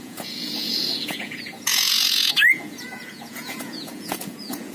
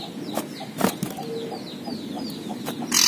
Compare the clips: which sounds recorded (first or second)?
second